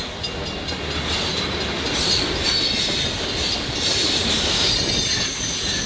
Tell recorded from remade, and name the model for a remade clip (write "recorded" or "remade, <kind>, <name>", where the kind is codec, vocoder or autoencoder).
recorded